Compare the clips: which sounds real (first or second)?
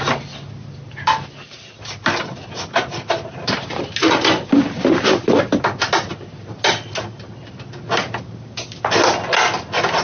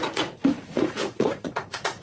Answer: first